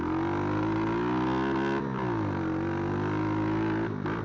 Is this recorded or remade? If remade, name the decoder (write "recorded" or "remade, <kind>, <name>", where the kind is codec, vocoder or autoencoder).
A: recorded